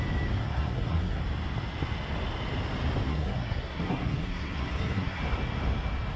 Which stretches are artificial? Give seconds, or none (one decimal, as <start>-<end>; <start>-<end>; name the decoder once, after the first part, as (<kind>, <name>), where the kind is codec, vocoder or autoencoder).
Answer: 0.4-1.2 (codec, SNAC); 3.1-5.2